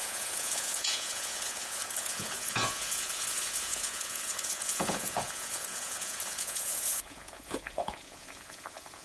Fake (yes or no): yes